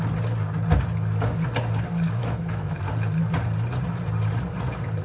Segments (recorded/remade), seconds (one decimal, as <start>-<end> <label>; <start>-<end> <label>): 0.0-2.2 recorded; 2.2-2.8 remade; 2.8-5.0 recorded